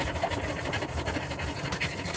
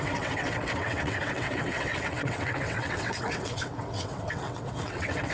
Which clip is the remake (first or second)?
second